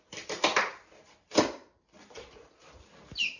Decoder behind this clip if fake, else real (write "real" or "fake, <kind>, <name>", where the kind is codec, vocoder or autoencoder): real